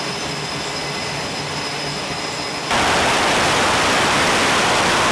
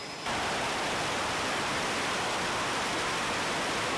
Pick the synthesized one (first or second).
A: second